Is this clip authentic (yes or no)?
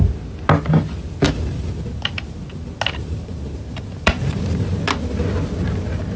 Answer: yes